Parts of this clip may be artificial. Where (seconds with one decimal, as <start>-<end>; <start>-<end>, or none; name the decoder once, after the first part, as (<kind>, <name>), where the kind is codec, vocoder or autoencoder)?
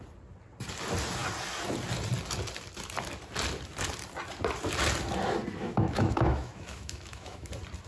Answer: 5.6-7.5 (autoencoder, DAC-VAE)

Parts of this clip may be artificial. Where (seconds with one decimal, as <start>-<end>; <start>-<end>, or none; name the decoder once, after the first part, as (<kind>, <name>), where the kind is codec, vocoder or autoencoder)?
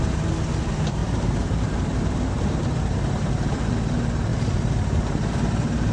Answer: 1.0-3.7 (vocoder, BigVGAN v2); 4.3-5.9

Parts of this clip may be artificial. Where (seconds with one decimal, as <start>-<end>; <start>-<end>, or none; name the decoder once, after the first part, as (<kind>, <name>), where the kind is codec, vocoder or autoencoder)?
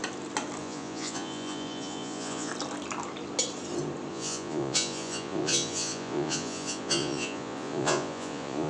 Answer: 0.6-2.5 (vocoder, Vocos); 4.1-8.7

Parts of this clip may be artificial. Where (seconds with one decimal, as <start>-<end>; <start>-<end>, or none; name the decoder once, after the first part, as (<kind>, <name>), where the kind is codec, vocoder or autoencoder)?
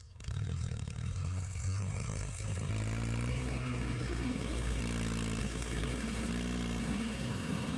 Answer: 0.0-2.7 (codec, SNAC); 3.3-4.8; 5.4-6.3; 6.8-7.8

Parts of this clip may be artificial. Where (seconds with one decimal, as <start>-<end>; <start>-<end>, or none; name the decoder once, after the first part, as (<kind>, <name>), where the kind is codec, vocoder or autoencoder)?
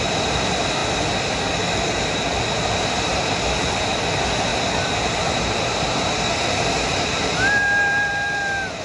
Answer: 3.1-3.8 (vocoder, BigVGAN v2)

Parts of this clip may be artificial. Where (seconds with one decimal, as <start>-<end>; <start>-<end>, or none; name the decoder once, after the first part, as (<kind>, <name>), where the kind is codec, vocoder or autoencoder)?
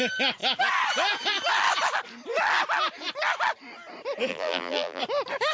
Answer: 4.3-5.0 (vocoder, BigVGAN v2)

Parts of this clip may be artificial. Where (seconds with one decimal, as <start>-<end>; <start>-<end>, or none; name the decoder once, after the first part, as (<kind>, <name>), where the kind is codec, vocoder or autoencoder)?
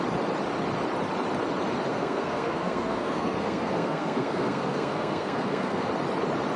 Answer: 1.9-5.9 (codec, SNAC)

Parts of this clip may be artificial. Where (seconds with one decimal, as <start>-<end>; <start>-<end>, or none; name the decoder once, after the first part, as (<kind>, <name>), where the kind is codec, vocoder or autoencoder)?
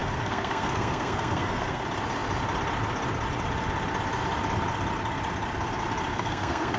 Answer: 0.0-1.8 (codec, SNAC); 6.1-6.8